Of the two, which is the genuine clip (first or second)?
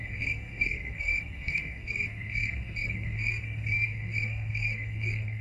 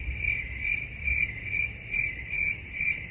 second